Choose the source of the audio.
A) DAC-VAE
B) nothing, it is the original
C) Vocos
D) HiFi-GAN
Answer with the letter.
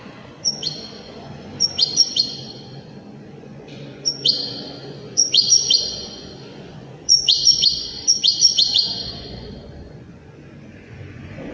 C